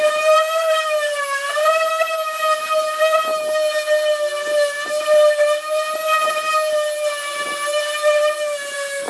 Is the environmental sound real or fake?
real